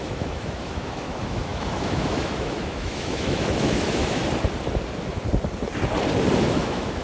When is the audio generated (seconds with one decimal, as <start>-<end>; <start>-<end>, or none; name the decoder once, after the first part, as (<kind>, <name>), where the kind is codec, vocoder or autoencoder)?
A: 0.0-4.2 (autoencoder, DAC-VAE); 6.4-7.0